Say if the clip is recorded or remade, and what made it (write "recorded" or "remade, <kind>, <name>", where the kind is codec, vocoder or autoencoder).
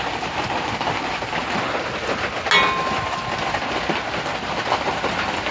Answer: recorded